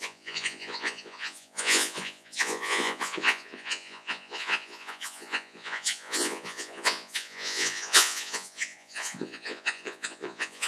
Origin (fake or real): fake